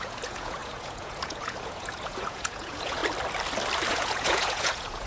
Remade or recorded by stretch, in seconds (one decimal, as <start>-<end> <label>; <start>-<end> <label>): 0.0-3.0 remade; 3.0-3.9 recorded; 3.9-5.1 remade